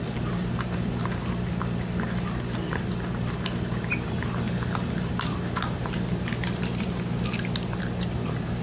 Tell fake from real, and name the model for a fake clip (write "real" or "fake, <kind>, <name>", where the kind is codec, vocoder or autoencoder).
real